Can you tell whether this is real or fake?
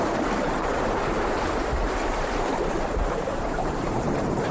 fake